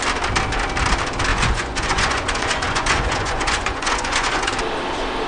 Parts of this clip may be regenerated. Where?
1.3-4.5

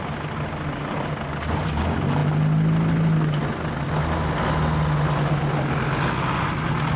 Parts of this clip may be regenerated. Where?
none

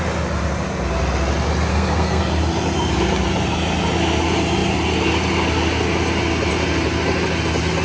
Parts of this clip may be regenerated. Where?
1.7-2.2

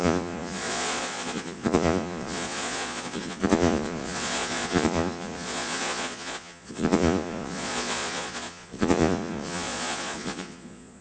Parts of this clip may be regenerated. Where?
0.0-11.0

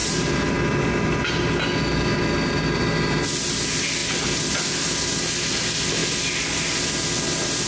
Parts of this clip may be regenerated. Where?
0.0-0.5

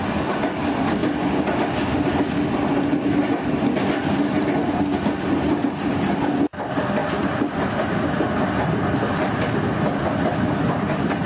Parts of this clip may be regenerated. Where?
none

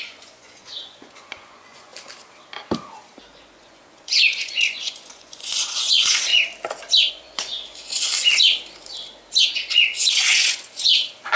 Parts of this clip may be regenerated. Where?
0.0-1.9; 3.3-6.3; 7.1-8.1; 9.4-11.4